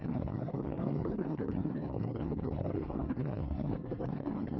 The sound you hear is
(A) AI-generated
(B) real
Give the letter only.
A